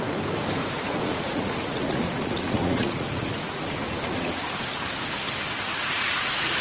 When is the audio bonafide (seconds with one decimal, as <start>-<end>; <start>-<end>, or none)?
0.0-0.6; 4.6-5.7